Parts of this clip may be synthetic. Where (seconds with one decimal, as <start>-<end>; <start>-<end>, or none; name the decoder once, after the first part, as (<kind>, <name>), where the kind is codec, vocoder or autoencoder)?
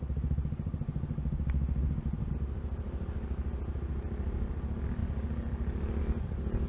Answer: none